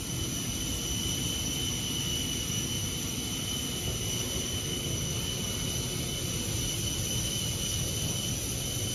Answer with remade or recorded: recorded